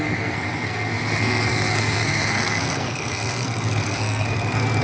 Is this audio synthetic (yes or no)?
yes